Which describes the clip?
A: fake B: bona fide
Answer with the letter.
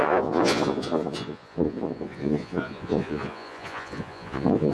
A